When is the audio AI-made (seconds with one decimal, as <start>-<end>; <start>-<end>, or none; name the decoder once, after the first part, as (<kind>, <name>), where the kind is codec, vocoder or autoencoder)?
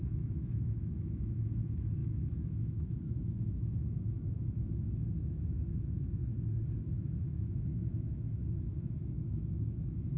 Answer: 0.0-6.2 (autoencoder, DAC-VAE); 6.9-10.2